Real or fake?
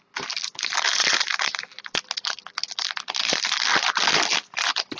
real